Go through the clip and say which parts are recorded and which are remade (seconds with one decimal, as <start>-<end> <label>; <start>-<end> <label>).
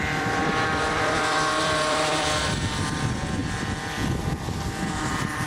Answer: 0.0-5.5 remade